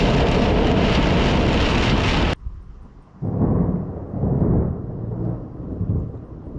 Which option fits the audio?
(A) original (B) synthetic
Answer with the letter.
A